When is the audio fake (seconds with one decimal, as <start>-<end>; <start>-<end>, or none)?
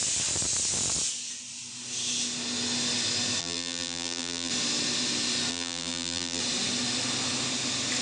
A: 3.4-4.5; 5.5-6.4